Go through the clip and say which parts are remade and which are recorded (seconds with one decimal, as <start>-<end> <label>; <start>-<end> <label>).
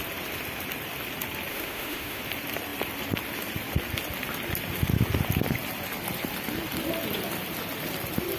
0.0-1.5 recorded; 1.5-2.2 remade; 2.2-8.4 recorded